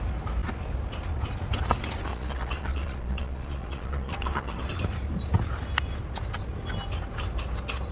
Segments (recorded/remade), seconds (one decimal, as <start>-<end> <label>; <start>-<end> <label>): 0.0-2.1 recorded; 2.1-4.6 remade; 4.6-7.9 recorded